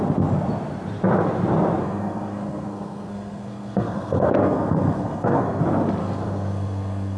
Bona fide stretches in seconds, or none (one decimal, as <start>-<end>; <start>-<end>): 0.0-1.8; 5.6-6.0